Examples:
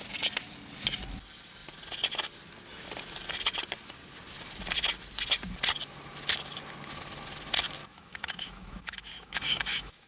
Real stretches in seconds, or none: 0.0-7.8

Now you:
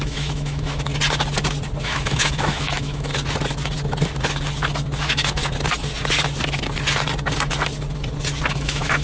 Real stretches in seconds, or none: 0.9-1.8; 3.1-5.0; 5.4-8.5

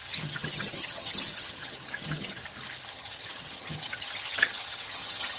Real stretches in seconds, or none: 2.4-2.9

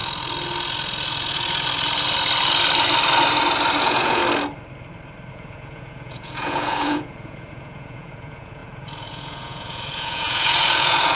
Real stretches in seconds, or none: 0.0-3.8; 4.2-5.3

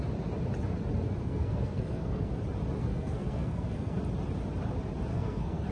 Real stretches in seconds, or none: 0.0-1.2; 2.3-2.8; 4.0-5.1

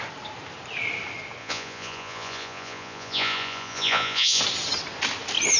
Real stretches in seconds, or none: 0.0-1.4; 4.4-5.6

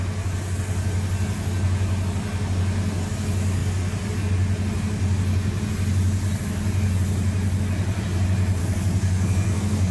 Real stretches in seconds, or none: 0.0-8.6

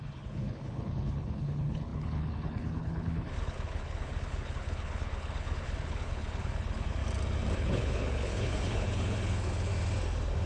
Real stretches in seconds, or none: 7.0-7.6; 9.7-10.5